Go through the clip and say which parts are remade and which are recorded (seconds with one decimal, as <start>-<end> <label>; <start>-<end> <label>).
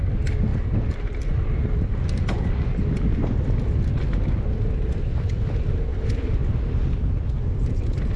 0.0-0.5 recorded; 0.5-2.5 remade; 2.5-3.1 recorded; 3.1-3.9 remade; 3.9-5.9 recorded; 5.9-6.6 remade; 6.6-8.2 recorded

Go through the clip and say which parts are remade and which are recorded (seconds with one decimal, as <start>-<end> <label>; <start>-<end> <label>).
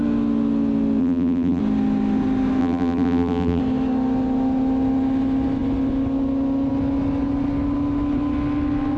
0.0-1.0 recorded; 1.0-1.6 remade; 1.6-2.6 recorded; 2.6-3.6 remade; 3.6-9.0 recorded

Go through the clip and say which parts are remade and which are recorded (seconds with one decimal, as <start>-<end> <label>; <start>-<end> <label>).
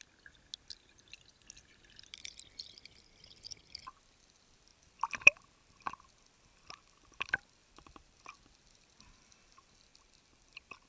0.0-4.7 recorded; 4.7-6.0 remade; 6.0-7.6 recorded; 7.6-8.2 remade; 8.2-9.9 recorded; 9.9-10.9 remade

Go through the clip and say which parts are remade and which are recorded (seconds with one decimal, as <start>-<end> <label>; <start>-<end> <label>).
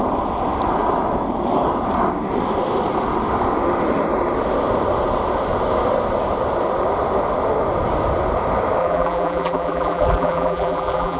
0.0-8.8 recorded; 8.8-11.2 remade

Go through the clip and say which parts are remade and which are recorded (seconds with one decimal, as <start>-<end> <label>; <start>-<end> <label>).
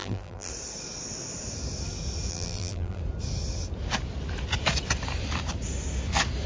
0.0-0.5 remade; 0.5-2.3 recorded; 2.3-3.0 remade; 3.0-6.5 recorded